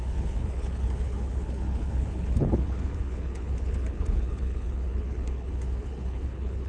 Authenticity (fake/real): fake